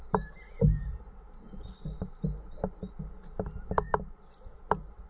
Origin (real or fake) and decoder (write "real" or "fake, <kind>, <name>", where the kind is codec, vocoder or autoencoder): real